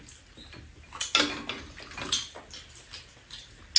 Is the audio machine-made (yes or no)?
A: no